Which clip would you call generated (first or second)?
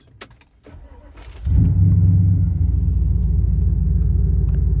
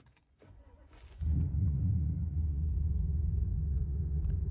second